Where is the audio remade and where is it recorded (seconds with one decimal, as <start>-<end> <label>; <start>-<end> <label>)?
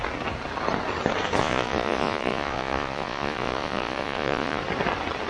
0.0-1.4 recorded; 1.4-4.6 remade; 4.6-5.3 recorded